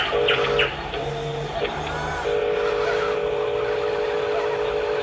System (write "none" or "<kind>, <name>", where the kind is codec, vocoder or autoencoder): none